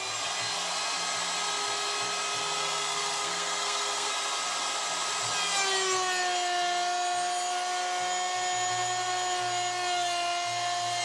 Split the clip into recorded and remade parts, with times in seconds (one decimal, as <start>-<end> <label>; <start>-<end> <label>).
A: 0.0-2.6 recorded; 2.6-4.1 remade; 4.1-11.0 recorded